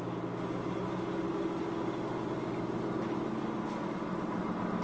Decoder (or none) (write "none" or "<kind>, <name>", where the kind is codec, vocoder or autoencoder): none